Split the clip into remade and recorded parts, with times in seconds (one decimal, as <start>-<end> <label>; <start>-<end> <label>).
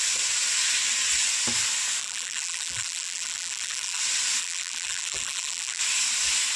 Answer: 0.0-2.0 recorded; 2.0-4.0 remade; 4.0-4.4 recorded; 4.4-5.8 remade; 5.8-6.6 recorded